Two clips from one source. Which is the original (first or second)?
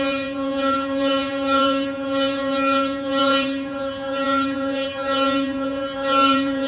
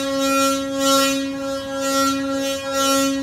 second